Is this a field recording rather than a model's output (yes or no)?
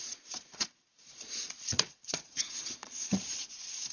no